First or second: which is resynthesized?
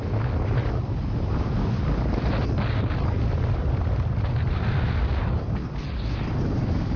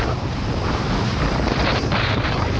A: second